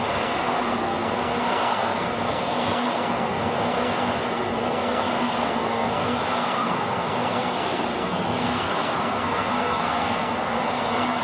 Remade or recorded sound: remade